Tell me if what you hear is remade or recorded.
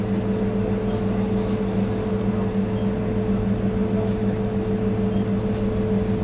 recorded